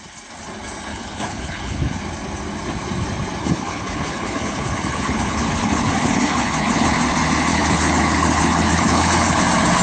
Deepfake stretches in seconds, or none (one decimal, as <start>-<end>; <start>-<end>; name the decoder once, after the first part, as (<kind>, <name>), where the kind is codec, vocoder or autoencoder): 0.9-2.0 (codec, HILCodec); 3.4-7.0; 7.5-9.4